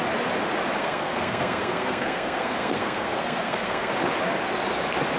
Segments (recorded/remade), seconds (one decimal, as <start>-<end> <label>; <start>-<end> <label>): 0.0-0.8 recorded; 0.8-3.9 remade; 3.9-5.2 recorded